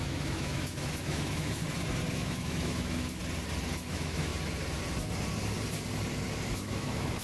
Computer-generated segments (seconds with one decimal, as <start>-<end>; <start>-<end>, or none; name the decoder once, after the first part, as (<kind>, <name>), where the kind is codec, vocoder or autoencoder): 0.0-1.6 (autoencoder, DAC-VAE); 2.1-3.2; 3.9-4.3; 6.5-7.2